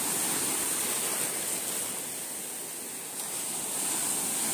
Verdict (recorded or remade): recorded